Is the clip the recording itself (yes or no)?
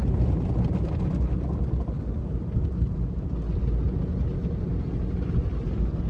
yes